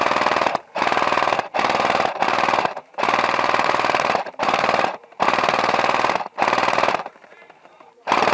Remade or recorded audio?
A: remade